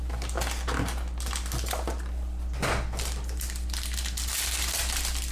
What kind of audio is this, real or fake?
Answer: real